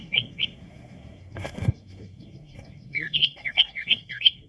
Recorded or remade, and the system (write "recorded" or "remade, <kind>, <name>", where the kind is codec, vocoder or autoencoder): remade, codec, SNAC